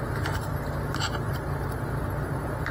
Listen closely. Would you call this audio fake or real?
fake